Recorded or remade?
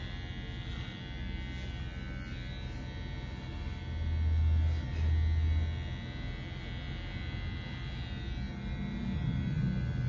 recorded